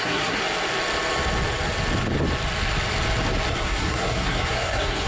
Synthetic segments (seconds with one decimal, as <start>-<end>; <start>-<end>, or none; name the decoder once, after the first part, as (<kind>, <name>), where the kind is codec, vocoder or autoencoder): 0.0-0.4 (codec, SNAC); 3.5-5.1